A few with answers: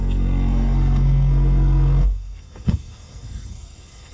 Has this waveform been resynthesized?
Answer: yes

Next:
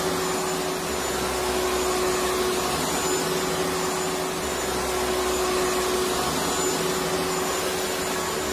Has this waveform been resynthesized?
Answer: no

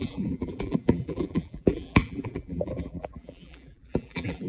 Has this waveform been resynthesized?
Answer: yes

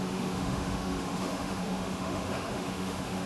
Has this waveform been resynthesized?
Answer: yes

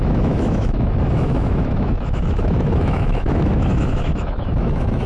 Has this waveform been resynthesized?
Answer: yes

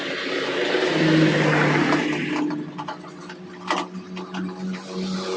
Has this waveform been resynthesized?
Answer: no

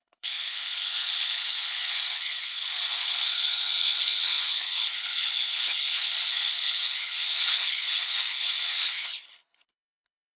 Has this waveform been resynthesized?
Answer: yes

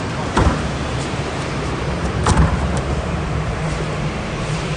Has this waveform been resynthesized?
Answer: yes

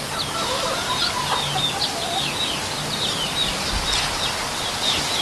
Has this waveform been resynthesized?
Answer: no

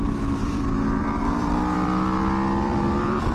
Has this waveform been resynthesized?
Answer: yes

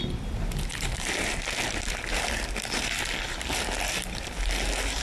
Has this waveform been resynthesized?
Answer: no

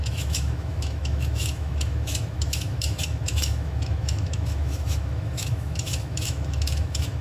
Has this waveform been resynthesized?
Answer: yes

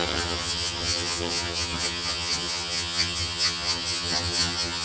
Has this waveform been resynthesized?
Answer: yes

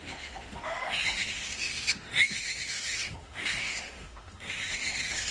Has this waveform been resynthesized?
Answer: yes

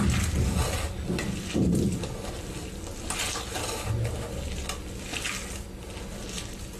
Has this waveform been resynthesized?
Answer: no